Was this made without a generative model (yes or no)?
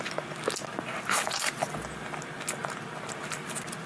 yes